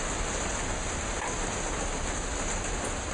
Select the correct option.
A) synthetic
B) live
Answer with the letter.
B